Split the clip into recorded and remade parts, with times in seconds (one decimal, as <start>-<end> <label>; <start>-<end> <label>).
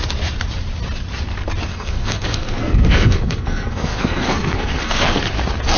0.0-1.7 recorded; 1.7-5.2 remade; 5.2-5.8 recorded